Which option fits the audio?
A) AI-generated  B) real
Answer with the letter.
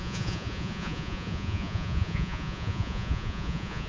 A